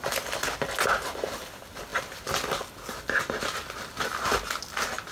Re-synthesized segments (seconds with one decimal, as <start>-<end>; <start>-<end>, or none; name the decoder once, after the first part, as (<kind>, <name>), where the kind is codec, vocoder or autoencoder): none